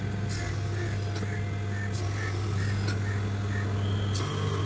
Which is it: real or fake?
real